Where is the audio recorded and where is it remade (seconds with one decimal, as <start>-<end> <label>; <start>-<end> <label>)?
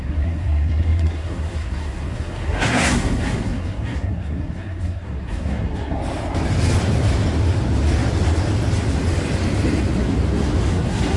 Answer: 0.0-6.0 remade; 6.0-10.7 recorded; 10.7-11.2 remade